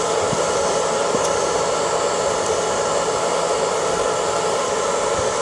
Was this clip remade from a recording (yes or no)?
no